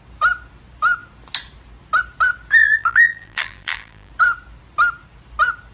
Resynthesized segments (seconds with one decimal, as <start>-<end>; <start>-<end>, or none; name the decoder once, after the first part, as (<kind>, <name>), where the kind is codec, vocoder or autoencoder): 2.6-4.1 (vocoder, BigVGAN v2)